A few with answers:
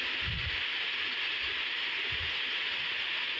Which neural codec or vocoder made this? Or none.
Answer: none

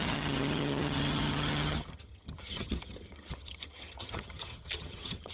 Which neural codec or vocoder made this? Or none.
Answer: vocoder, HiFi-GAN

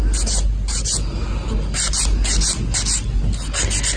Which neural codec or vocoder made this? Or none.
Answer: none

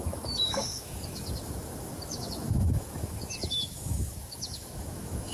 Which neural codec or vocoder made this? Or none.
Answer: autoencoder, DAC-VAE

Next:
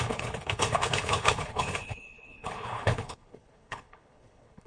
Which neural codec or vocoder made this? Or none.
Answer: codec, HILCodec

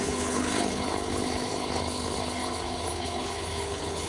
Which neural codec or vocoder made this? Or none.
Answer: codec, HILCodec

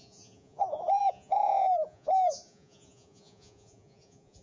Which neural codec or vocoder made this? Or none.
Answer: vocoder, Vocos